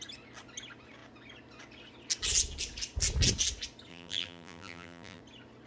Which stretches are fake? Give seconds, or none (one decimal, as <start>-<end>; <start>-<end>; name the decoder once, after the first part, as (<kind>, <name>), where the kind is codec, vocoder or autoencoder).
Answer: 3.9-5.2 (vocoder, BigVGAN v2)